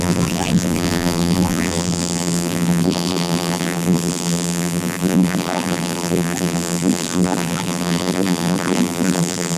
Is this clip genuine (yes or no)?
no